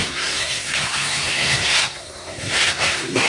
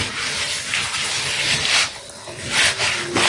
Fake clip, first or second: first